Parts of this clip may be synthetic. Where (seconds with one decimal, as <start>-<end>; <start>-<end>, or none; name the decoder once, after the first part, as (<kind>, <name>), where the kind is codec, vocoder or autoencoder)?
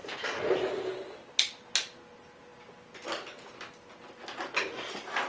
none